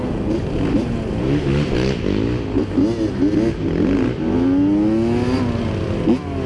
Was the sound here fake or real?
real